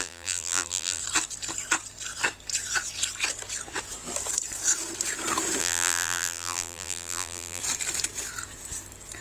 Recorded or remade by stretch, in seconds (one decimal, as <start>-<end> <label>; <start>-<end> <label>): 0.0-1.0 remade; 1.0-5.6 recorded; 5.6-7.6 remade; 7.6-9.2 recorded